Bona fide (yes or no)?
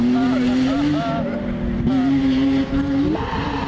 yes